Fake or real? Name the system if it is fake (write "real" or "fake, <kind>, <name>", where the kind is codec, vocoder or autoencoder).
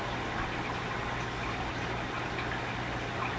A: real